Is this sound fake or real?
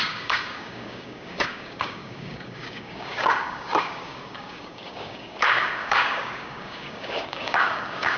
fake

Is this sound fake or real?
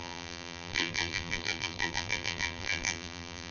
fake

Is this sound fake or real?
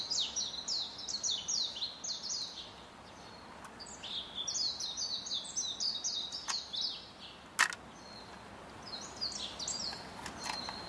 real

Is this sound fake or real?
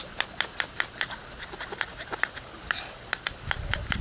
real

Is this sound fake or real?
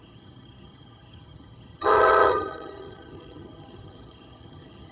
fake